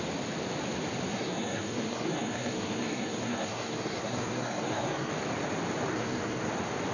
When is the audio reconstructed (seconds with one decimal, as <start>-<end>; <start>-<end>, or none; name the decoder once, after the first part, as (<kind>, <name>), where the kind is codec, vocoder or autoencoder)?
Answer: 1.1-5.1 (codec, SNAC); 5.9-6.5